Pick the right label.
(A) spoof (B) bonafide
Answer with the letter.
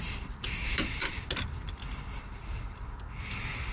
B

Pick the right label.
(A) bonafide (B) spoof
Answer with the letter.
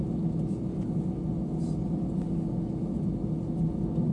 A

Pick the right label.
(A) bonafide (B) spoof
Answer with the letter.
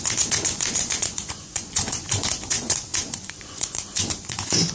B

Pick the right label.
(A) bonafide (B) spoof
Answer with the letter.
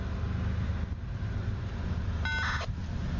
A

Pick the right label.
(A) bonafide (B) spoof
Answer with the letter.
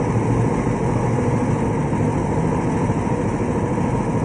A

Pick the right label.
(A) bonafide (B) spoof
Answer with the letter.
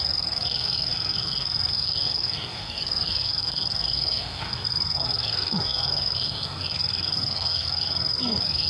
B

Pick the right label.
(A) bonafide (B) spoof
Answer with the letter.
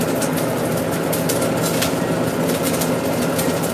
A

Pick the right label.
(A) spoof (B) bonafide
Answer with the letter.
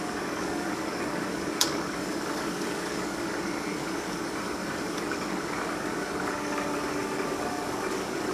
A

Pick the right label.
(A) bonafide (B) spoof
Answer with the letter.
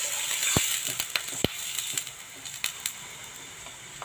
A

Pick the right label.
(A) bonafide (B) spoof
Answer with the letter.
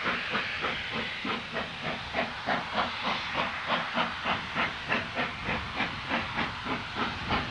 A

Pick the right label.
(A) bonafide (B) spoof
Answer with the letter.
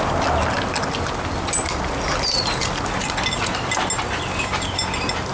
A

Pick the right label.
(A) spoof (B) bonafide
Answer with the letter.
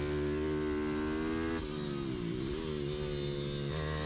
B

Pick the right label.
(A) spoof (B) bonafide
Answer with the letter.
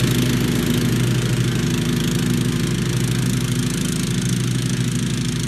B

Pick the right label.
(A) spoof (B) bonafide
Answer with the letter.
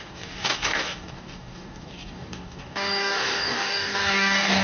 A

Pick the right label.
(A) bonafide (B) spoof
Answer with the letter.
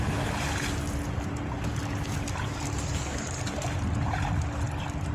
A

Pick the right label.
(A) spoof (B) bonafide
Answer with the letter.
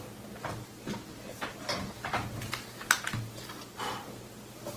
B